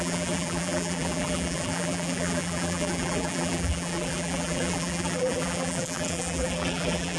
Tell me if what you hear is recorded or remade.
remade